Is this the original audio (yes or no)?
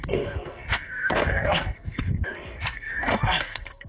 no